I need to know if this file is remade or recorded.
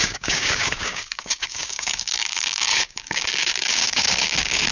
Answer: remade